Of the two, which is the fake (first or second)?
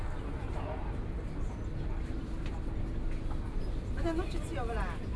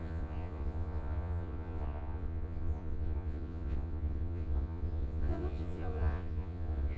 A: second